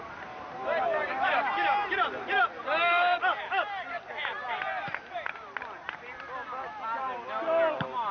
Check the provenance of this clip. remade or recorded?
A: recorded